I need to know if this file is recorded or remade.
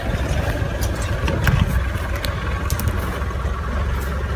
recorded